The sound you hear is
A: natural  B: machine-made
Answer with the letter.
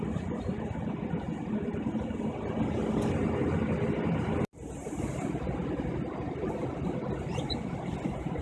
A